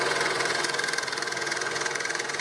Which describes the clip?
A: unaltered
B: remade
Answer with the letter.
B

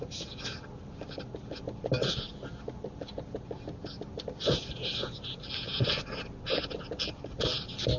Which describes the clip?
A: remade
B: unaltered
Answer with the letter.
B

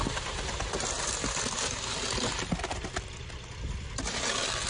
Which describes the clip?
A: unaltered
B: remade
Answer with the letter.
A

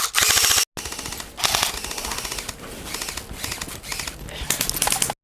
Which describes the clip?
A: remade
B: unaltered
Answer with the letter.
B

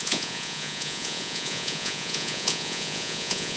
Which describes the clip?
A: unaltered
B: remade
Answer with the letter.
B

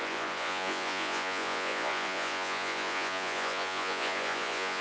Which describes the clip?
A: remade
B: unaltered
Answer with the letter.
A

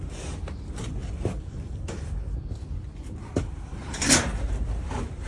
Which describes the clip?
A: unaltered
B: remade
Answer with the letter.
A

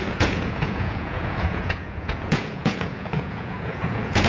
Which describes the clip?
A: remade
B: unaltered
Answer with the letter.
A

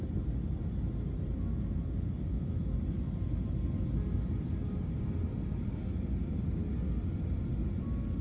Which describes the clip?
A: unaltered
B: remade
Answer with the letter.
A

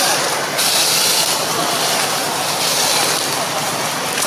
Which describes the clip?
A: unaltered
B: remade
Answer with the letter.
A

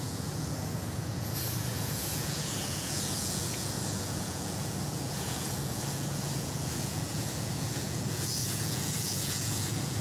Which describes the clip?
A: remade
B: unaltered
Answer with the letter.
A